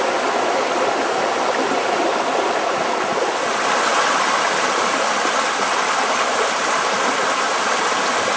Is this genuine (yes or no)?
no